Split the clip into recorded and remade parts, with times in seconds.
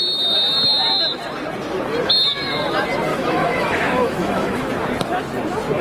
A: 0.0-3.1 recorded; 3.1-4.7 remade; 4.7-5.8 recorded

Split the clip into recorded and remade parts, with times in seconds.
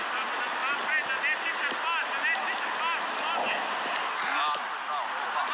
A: 0.0-5.5 recorded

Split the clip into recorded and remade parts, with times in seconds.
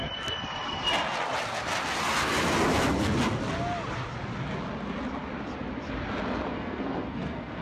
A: 0.0-6.5 recorded; 6.5-7.6 remade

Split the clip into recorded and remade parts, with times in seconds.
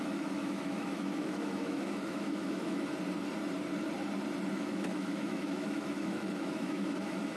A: 0.0-2.9 remade; 2.9-4.5 recorded; 4.5-7.4 remade